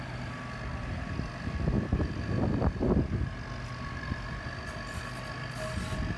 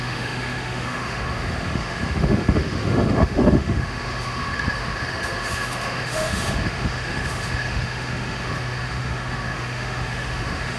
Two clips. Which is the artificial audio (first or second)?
second